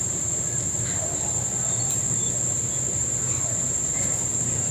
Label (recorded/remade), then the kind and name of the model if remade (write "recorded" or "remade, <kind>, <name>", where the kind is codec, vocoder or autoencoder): remade, vocoder, BigVGAN v2